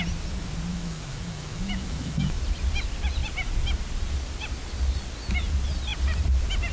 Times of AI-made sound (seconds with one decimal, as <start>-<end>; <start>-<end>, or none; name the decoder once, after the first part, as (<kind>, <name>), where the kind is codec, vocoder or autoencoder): 0.7-2.4 (autoencoder, DAC-VAE)